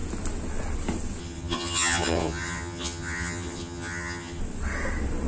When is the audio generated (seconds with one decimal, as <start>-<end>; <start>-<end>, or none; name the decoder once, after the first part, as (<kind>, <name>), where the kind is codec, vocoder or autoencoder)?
1.2-4.4 (vocoder, HiFi-GAN)